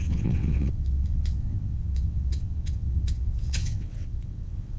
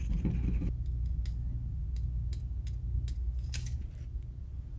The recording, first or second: second